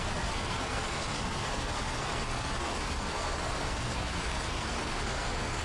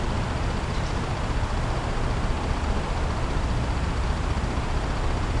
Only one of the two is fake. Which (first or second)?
first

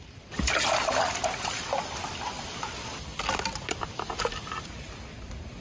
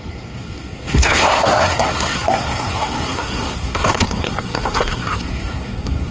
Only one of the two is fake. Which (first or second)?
second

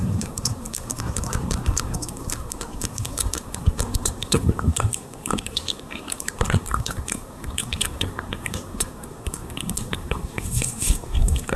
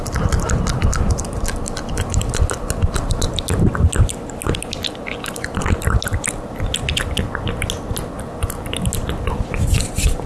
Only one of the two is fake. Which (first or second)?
first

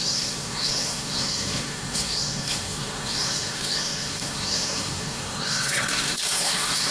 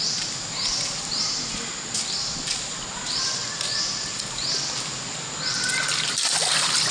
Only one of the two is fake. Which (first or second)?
first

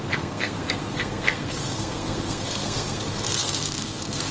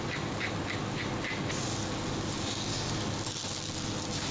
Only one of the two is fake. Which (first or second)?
first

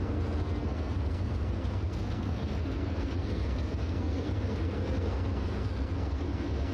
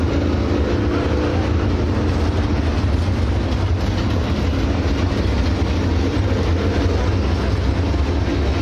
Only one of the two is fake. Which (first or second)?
first